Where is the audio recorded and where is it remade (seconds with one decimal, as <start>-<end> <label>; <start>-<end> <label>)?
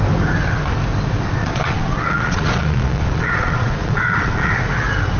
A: 0.0-1.4 recorded; 1.4-4.5 remade; 4.5-5.2 recorded